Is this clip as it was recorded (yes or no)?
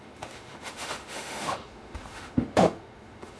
no